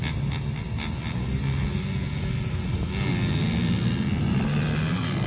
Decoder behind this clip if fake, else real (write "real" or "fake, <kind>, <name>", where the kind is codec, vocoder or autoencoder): real